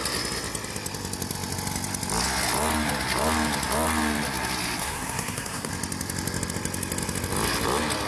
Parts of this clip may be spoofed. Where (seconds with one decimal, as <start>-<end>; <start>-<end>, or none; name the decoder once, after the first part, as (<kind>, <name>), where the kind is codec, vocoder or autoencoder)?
4.8-5.7 (codec, SNAC)